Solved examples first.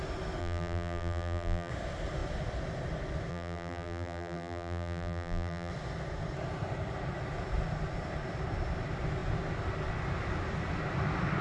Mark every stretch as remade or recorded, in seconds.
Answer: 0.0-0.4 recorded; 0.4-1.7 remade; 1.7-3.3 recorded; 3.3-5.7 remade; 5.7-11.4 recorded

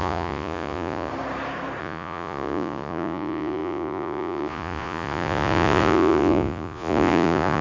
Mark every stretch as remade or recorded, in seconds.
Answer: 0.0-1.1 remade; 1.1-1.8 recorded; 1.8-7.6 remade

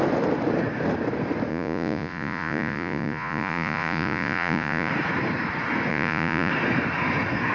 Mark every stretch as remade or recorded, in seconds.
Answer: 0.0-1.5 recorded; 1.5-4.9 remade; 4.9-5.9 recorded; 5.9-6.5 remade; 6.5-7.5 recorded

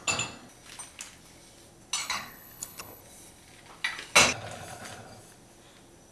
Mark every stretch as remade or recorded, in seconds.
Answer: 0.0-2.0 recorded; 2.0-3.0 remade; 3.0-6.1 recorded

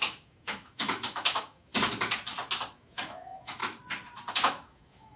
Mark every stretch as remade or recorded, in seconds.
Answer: 0.0-1.7 remade; 1.7-2.7 recorded; 2.7-3.6 remade; 3.6-4.3 recorded; 4.3-5.2 remade

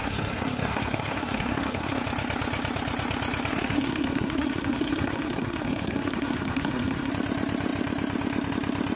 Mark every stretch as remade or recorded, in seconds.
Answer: 0.0-2.0 remade; 2.0-3.5 recorded; 3.5-7.1 remade; 7.1-9.0 recorded

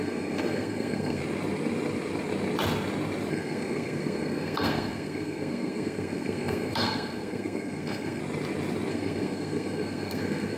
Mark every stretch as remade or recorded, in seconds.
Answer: 0.0-1.2 remade; 1.2-3.3 recorded; 3.3-8.2 remade; 8.2-8.9 recorded; 8.9-10.6 remade